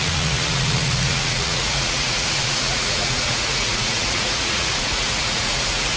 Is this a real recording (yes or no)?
no